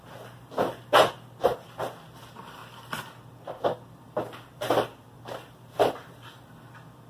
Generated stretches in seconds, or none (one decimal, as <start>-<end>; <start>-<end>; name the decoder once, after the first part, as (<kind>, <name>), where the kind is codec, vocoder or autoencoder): none